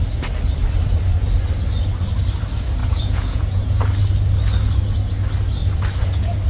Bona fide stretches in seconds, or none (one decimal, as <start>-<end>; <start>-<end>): 0.0-2.8; 3.8-6.5